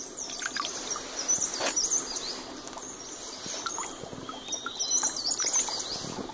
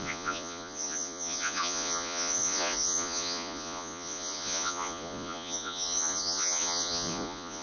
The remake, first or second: second